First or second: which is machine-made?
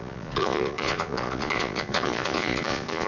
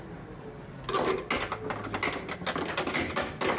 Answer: first